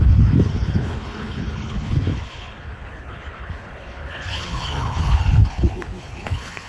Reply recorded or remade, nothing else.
remade